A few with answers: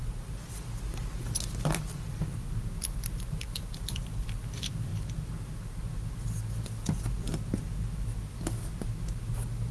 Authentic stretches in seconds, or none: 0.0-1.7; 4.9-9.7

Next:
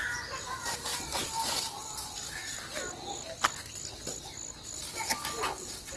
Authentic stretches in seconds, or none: 0.0-6.0

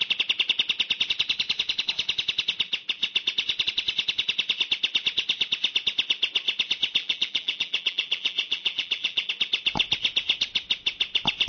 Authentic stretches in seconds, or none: 0.0-7.0; 9.3-11.5

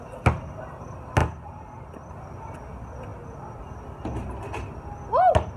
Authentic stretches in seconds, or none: 0.0-5.6

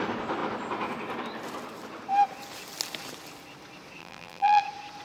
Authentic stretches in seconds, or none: 0.0-4.0; 4.6-5.0

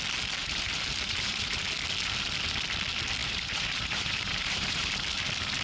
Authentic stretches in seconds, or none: 0.0-0.4; 1.6-3.2; 4.9-5.6